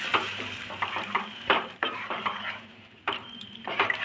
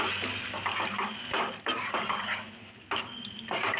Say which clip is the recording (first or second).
second